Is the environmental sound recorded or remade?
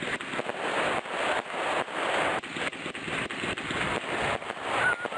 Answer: recorded